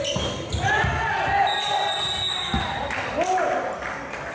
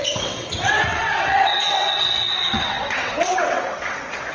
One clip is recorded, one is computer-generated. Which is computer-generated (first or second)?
second